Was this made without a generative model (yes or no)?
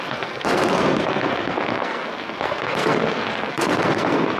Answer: no